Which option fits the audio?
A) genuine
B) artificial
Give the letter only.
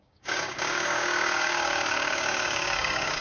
B